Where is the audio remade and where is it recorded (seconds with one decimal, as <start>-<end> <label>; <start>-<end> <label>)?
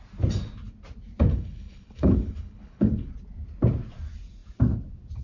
0.0-1.3 recorded; 1.3-3.1 remade; 3.1-5.2 recorded